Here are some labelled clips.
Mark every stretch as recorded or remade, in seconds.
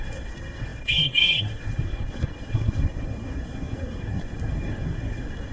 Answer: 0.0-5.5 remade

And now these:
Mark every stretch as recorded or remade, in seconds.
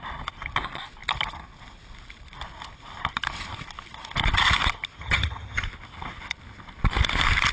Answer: 0.0-5.0 recorded; 5.0-5.6 remade; 5.6-7.5 recorded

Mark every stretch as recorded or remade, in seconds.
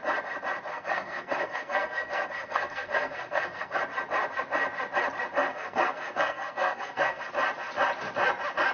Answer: 0.0-0.7 recorded; 0.7-3.8 remade; 3.8-5.5 recorded; 5.5-7.2 remade; 7.2-8.7 recorded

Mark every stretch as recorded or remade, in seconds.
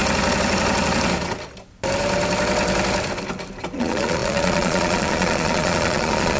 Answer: 0.0-3.8 recorded; 3.8-6.4 remade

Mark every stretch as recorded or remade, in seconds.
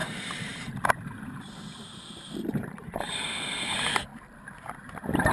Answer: 0.0-3.2 remade; 3.2-4.1 recorded; 4.1-4.8 remade; 4.8-5.3 recorded